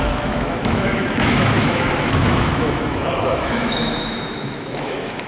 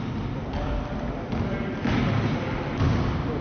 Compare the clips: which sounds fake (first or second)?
first